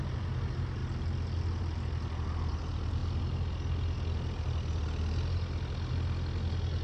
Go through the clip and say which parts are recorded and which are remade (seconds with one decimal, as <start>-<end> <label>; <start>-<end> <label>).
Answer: 0.0-6.8 recorded